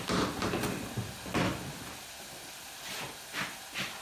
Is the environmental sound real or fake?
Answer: real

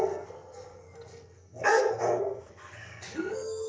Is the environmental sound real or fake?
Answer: fake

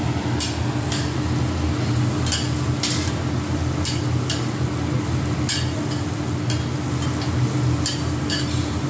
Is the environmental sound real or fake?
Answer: real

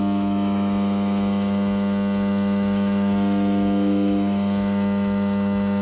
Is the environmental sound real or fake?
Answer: fake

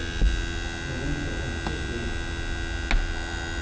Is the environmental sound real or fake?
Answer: real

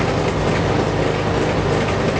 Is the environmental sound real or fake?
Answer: real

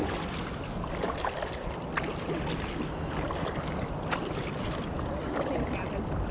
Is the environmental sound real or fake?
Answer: real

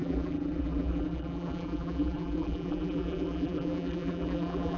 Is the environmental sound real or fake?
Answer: fake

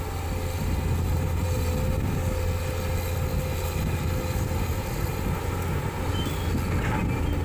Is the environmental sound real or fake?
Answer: real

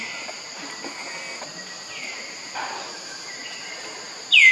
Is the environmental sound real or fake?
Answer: real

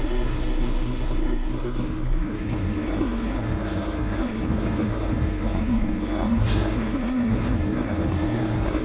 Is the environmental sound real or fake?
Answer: fake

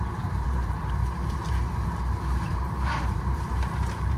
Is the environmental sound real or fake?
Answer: fake